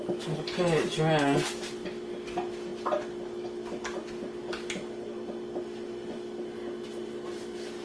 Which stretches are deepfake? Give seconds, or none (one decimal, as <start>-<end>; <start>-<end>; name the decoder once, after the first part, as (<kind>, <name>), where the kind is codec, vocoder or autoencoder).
none